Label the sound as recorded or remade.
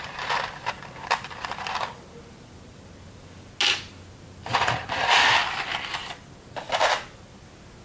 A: recorded